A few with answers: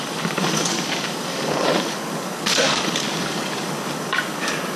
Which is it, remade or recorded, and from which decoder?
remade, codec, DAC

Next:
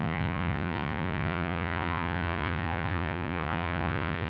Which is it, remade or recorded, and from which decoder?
remade, vocoder, Vocos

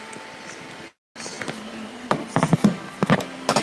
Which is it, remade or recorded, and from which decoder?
recorded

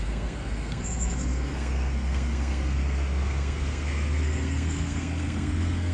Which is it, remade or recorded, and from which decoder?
remade, codec, SNAC